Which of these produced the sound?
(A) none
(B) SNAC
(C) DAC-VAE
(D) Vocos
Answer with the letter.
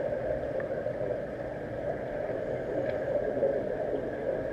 A